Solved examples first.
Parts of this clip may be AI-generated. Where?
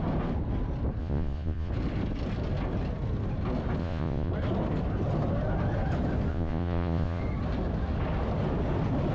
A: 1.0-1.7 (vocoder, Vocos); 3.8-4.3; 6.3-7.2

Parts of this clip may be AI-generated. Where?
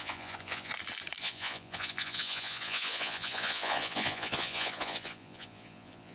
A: 0.0-0.7 (vocoder, Vocos); 1.2-6.1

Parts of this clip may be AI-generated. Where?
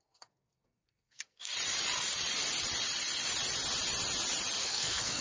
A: 0.0-1.5 (codec, SNAC); 4.6-5.2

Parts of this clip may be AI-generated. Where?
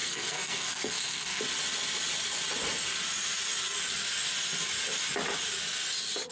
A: 0.0-1.4 (codec, SNAC)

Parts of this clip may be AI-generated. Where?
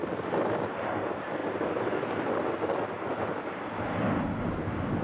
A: none